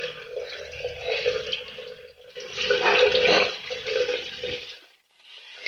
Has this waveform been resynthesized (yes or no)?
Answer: no